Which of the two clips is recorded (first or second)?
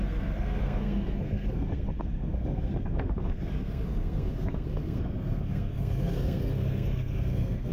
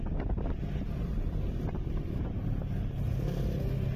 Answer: second